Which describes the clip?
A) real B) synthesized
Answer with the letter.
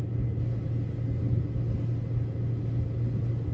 A